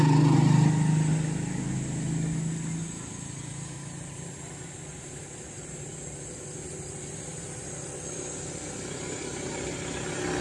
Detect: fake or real real